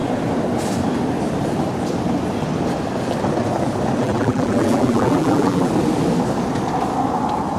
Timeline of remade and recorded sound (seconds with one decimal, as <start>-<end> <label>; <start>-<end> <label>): 0.0-4.0 recorded; 4.0-5.7 remade; 5.7-7.6 recorded